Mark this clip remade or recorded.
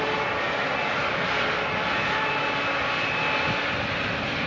recorded